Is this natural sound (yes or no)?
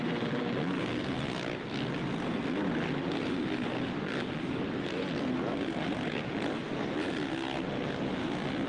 yes